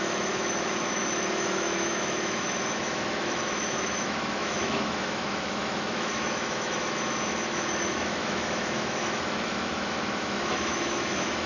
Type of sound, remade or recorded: remade